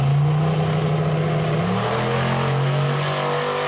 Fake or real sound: real